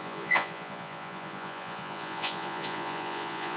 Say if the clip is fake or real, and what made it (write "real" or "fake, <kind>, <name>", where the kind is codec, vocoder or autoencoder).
fake, vocoder, Vocos